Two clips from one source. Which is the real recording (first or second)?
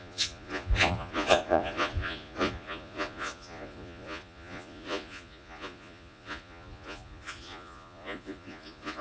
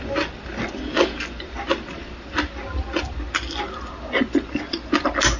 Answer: second